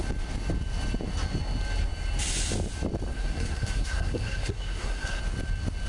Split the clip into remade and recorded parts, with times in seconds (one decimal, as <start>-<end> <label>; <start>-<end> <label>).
0.0-3.1 recorded; 3.1-5.2 remade; 5.2-5.9 recorded